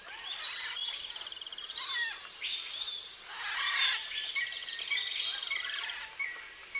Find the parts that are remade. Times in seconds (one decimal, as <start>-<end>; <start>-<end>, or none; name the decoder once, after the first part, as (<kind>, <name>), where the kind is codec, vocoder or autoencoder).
none